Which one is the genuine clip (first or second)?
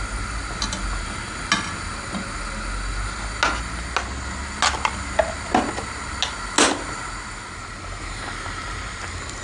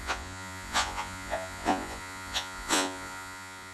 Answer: first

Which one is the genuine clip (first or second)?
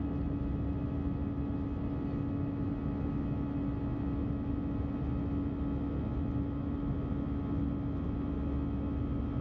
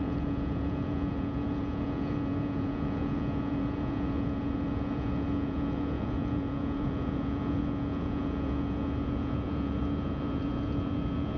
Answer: first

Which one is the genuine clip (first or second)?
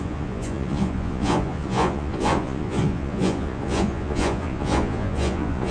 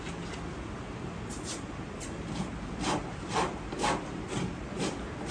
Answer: second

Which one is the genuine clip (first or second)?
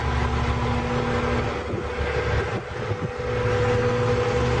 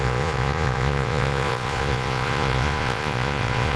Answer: first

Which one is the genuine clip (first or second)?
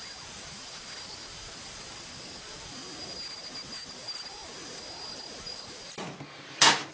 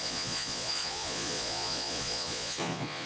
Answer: first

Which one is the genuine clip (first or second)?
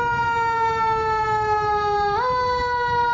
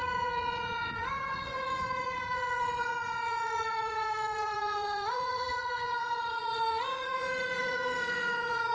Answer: first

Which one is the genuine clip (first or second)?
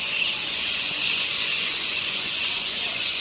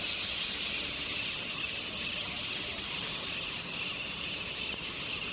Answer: second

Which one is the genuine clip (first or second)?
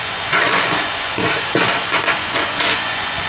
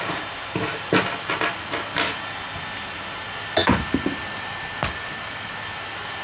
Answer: second